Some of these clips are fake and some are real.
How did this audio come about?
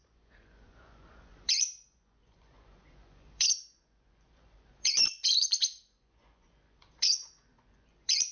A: fake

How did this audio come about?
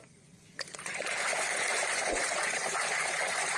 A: fake